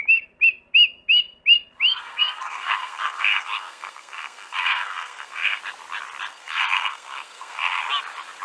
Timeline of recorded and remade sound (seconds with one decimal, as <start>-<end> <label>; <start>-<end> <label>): 0.0-1.9 recorded; 1.9-5.6 remade; 5.6-6.3 recorded; 6.3-7.8 remade; 7.8-8.4 recorded